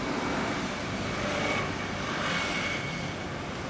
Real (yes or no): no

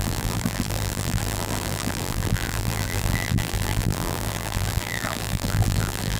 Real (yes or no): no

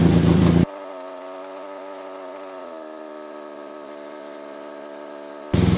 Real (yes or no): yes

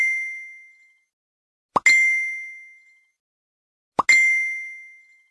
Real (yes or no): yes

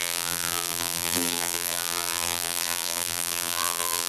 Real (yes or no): no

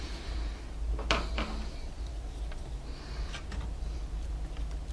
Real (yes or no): yes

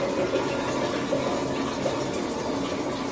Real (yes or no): yes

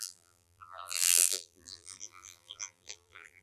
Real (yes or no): no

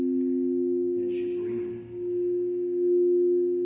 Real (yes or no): yes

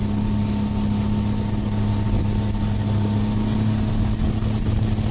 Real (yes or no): yes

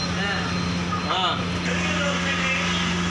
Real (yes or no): yes